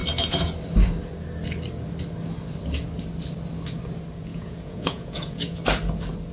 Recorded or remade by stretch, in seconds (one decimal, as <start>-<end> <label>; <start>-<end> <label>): 0.0-4.3 recorded; 4.3-5.6 remade; 5.6-6.3 recorded